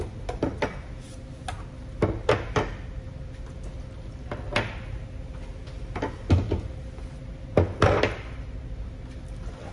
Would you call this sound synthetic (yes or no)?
no